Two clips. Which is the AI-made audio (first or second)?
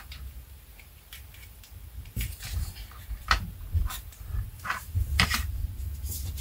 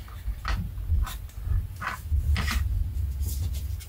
first